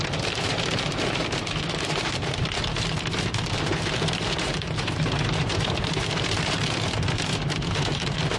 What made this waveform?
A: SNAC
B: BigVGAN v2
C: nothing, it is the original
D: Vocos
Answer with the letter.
B